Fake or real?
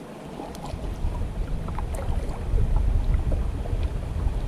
real